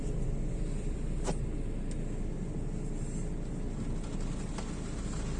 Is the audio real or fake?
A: real